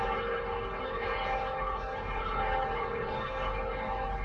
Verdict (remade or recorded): remade